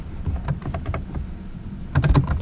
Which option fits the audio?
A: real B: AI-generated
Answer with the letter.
B